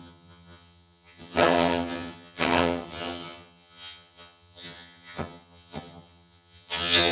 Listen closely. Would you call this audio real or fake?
fake